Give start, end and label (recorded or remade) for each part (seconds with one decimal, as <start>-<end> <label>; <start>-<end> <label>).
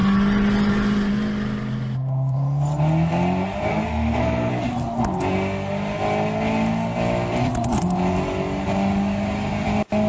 0.0-3.7 recorded; 3.7-4.5 remade; 4.5-10.1 recorded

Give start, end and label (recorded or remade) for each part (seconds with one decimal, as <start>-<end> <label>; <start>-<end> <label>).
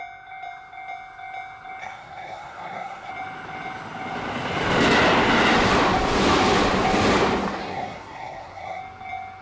0.0-1.8 recorded; 1.8-3.1 remade; 3.1-7.6 recorded; 7.6-8.8 remade; 8.8-9.4 recorded